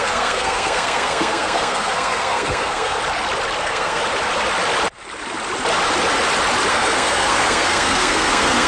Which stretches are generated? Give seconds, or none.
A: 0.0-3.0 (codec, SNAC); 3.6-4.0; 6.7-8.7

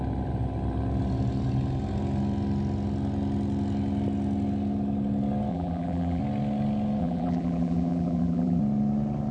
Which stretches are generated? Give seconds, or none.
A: 5.5-6.2 (vocoder, BigVGAN v2); 7.0-8.6

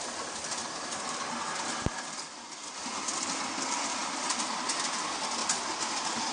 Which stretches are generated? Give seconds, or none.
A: none